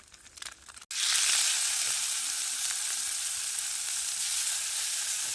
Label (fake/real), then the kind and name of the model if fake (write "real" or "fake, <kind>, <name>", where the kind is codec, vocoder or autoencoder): real